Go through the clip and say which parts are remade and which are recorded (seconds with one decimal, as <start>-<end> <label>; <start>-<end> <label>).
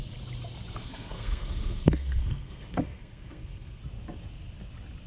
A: 0.0-0.8 recorded; 0.8-3.8 remade; 3.8-5.1 recorded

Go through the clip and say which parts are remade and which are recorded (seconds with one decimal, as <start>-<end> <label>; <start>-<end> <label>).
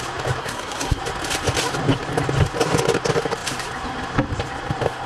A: 0.0-0.4 recorded; 0.4-1.0 remade; 1.0-5.1 recorded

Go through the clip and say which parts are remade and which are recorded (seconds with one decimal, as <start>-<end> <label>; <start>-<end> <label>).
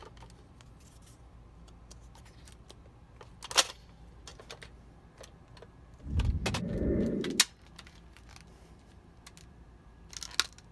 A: 0.0-10.7 recorded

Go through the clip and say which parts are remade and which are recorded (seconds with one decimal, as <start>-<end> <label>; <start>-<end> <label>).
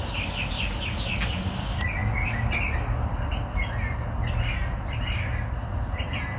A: 0.0-6.4 recorded